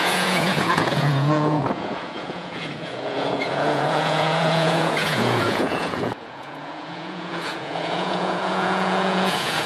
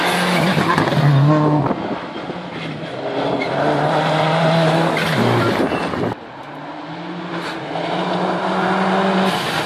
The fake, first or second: first